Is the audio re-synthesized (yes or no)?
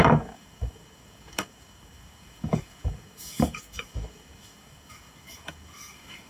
yes